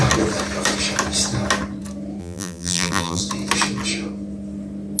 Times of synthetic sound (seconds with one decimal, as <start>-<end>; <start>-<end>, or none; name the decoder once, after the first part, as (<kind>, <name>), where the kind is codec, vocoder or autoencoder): 2.2-3.2 (vocoder, BigVGAN v2)